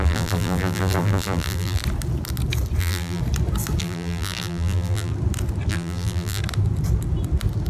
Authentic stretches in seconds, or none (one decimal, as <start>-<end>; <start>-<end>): 1.8-2.8; 3.2-3.8; 5.1-5.7; 6.4-7.7